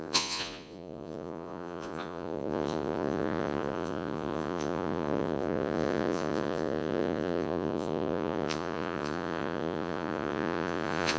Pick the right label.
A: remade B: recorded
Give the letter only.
A